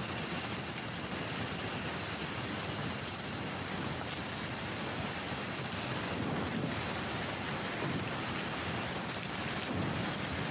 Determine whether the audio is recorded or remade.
recorded